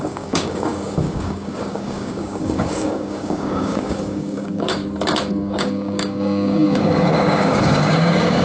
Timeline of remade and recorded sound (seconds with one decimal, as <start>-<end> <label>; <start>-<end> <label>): 0.0-4.8 remade; 4.8-5.3 recorded; 5.3-8.4 remade